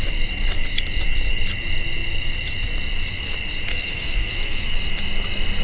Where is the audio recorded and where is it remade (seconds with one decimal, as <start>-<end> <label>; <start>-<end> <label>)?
0.0-3.7 recorded; 3.7-4.8 remade; 4.8-5.6 recorded